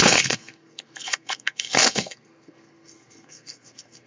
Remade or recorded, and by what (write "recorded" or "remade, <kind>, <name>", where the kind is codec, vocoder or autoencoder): remade, codec, SNAC